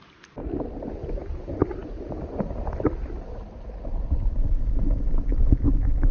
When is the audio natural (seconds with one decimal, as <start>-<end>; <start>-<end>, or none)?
0.0-6.1